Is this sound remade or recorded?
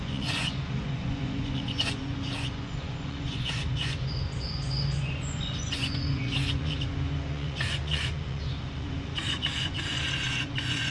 remade